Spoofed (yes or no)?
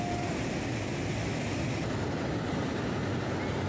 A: no